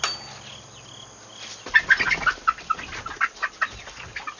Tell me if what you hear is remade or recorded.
recorded